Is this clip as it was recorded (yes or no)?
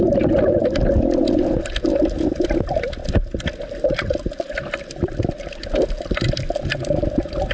yes